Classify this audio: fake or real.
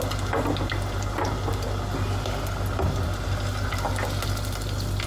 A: real